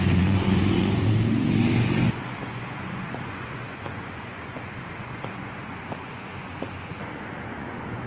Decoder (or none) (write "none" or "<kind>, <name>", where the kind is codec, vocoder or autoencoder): vocoder, Vocos